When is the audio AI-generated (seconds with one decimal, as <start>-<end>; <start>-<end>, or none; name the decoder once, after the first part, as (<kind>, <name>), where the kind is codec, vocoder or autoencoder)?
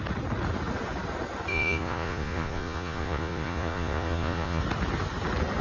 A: 1.5-4.6 (vocoder, Vocos)